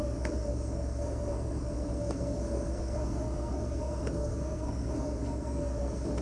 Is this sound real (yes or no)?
no